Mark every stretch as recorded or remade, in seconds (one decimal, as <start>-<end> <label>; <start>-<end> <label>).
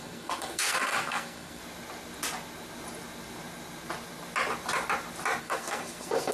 0.0-1.6 remade; 1.6-5.4 recorded; 5.4-6.3 remade